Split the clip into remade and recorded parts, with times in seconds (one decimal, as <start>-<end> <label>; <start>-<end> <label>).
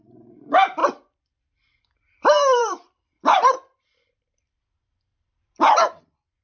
0.0-0.8 recorded; 0.8-4.6 remade; 4.6-5.1 recorded; 5.1-6.0 remade; 6.0-6.4 recorded